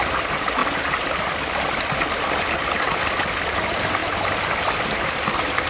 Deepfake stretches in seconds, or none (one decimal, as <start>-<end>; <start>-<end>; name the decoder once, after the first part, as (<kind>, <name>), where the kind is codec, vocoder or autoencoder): 0.0-0.6 (vocoder, BigVGAN v2); 3.6-5.7